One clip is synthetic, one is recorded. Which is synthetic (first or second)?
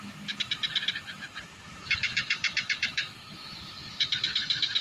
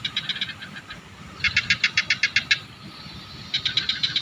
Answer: first